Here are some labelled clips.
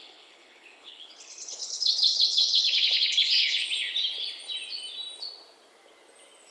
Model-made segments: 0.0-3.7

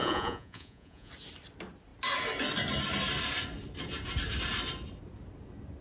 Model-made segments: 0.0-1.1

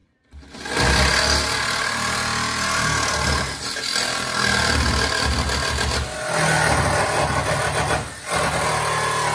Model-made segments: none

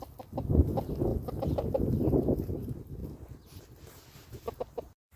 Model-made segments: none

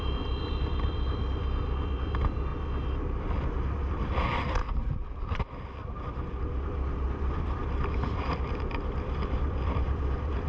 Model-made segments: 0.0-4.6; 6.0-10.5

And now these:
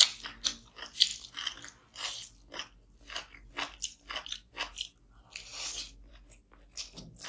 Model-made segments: none

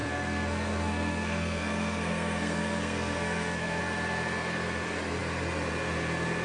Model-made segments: 0.0-3.8

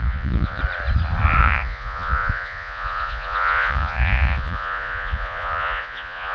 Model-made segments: 0.0-0.6; 1.4-6.3